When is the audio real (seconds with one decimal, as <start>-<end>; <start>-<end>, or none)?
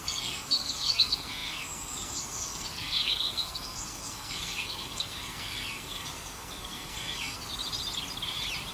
7.5-8.7